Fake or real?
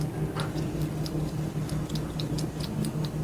real